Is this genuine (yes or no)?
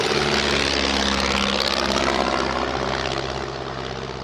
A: yes